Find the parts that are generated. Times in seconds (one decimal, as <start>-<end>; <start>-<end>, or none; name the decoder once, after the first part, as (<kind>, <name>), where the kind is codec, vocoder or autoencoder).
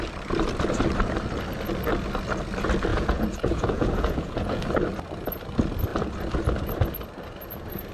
2.9-4.6 (vocoder, Vocos)